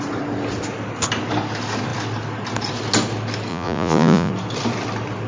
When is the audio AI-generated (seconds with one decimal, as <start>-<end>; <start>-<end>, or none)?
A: 3.5-4.3